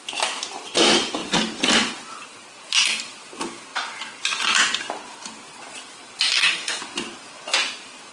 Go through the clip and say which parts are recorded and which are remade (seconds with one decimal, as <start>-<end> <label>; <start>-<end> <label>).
0.0-6.3 recorded; 6.3-6.8 remade; 6.8-8.1 recorded